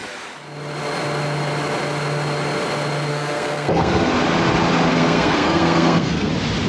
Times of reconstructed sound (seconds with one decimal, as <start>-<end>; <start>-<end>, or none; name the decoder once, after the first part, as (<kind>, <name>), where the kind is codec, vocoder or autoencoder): 3.1-4.1 (codec, SNAC); 4.9-6.3